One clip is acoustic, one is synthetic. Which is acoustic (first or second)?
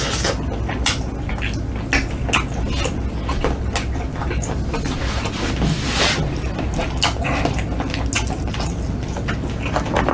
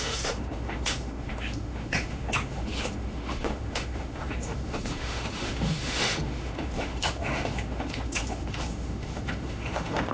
first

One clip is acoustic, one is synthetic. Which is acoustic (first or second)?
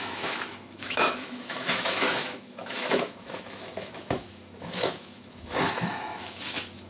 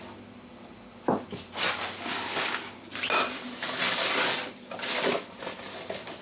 second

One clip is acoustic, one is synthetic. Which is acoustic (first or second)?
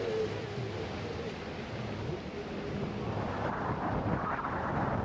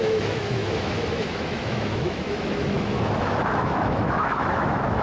first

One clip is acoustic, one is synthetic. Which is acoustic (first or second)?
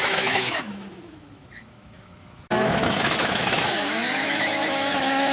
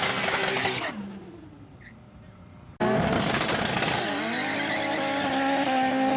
second